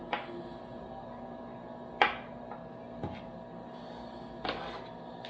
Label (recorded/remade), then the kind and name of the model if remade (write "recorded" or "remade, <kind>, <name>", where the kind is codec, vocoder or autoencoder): recorded